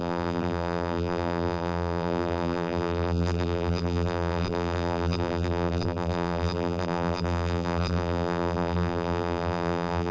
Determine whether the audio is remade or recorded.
remade